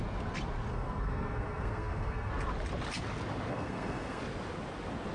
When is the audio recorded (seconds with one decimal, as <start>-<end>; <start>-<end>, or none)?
0.0-0.7; 2.3-3.5; 4.2-5.1